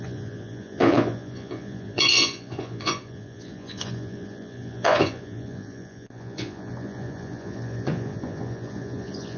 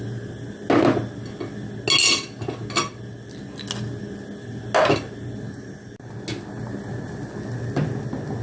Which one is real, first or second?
second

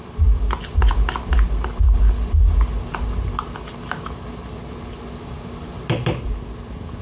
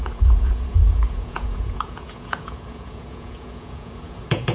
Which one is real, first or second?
first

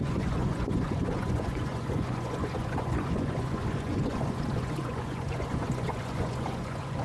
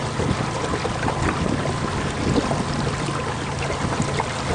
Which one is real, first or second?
second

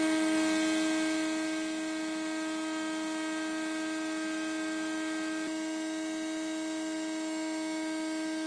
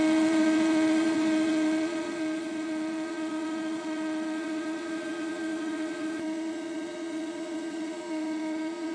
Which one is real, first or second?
first